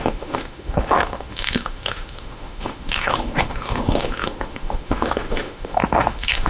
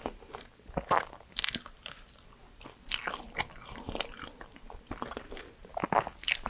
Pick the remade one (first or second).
first